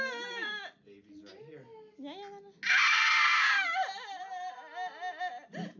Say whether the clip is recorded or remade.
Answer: recorded